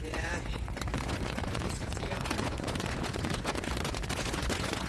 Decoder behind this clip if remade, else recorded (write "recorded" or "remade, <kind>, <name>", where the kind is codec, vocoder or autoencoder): remade, vocoder, Vocos